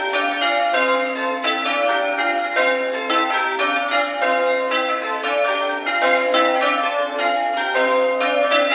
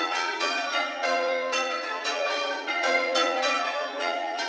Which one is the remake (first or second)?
second